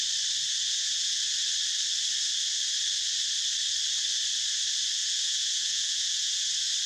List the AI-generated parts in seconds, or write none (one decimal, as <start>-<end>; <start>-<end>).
0.6-1.2; 5.0-6.5